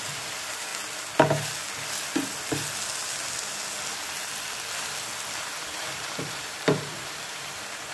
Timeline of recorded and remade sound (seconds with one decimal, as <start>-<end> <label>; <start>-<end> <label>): 0.0-0.7 remade; 0.7-5.4 recorded; 5.4-7.9 remade